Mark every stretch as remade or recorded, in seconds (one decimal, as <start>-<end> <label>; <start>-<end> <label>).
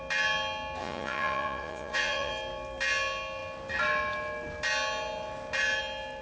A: 0.0-0.8 recorded; 0.8-2.3 remade; 2.3-6.2 recorded